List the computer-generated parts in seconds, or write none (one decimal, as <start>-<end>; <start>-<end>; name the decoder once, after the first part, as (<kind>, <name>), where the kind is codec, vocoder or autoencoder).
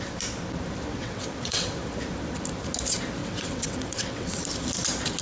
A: 0.9-1.7 (vocoder, WaveNeXt); 3.2-4.4